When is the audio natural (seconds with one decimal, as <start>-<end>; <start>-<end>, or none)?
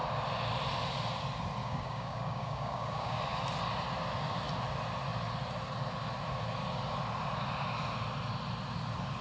0.0-1.6; 3.2-9.2